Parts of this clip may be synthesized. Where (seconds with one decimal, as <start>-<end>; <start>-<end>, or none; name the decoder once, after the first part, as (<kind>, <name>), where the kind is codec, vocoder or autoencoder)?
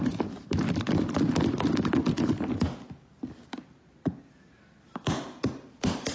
none